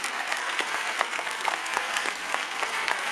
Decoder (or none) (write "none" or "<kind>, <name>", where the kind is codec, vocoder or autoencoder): codec, SNAC